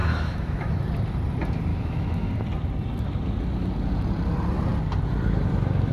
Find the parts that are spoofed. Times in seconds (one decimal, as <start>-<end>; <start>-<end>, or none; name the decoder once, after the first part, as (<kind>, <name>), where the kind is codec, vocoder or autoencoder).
0.0-0.7 (autoencoder, DAC-VAE); 1.7-2.3